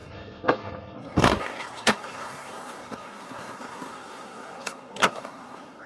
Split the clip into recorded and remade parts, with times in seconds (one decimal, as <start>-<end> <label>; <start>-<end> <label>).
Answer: 0.0-5.9 remade